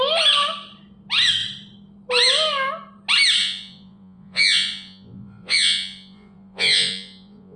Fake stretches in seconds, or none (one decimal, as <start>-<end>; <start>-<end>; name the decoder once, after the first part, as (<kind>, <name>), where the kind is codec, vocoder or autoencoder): 3.4-7.6 (vocoder, Vocos)